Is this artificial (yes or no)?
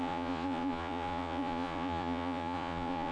yes